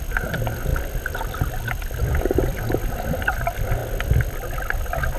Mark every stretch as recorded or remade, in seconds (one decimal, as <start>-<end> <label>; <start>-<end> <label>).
0.0-0.7 remade; 0.7-1.7 recorded; 1.7-3.8 remade; 3.8-4.7 recorded; 4.7-5.2 remade